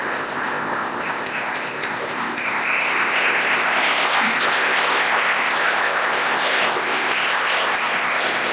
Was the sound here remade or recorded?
remade